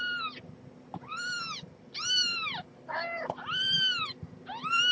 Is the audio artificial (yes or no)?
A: no